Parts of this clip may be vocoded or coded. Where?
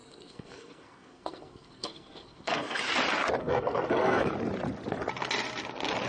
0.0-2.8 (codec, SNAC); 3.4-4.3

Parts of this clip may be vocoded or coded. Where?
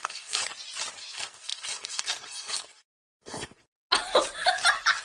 0.0-0.4 (codec, SNAC); 1.0-3.6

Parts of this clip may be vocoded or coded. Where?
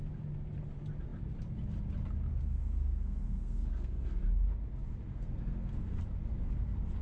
2.3-4.2 (codec, SNAC); 5.1-6.0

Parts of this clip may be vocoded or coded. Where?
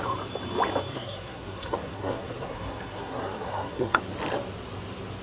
0.9-4.0 (codec, SNAC)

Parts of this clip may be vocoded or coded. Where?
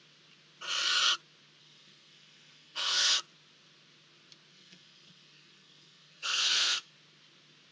1.6-3.1 (codec, SNAC); 4.5-6.9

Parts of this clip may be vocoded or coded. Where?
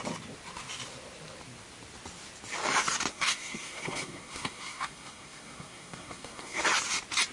3.1-6.6 (codec, SNAC)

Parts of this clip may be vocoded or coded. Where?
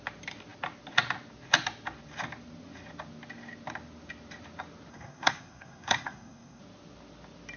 4.9-6.6 (codec, SNAC)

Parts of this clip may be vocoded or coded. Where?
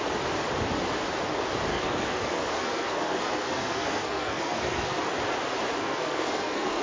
1.7-5.0 (codec, SNAC); 5.8-6.8